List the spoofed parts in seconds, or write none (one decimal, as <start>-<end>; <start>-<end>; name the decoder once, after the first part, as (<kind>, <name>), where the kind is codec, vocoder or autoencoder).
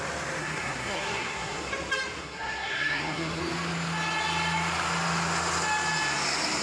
0.4-1.7 (codec, SNAC); 2.2-3.4